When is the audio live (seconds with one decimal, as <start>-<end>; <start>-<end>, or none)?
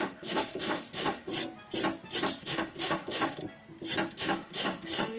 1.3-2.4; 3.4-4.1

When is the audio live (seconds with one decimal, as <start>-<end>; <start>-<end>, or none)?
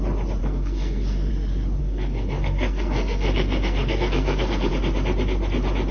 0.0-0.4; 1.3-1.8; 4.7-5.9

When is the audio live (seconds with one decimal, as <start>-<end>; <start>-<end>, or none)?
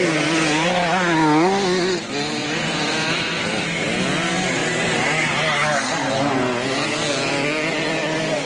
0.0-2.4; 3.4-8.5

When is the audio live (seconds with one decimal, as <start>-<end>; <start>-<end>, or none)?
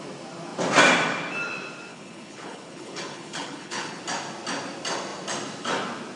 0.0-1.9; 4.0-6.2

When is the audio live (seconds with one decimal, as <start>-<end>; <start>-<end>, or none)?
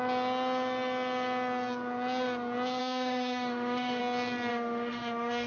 0.0-2.8; 4.0-4.5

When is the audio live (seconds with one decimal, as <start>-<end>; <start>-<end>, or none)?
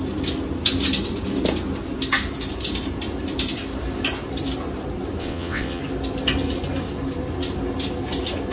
0.0-5.2; 5.8-8.5